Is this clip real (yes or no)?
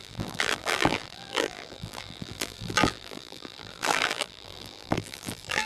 no